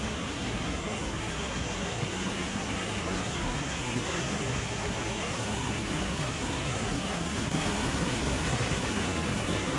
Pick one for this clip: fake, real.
fake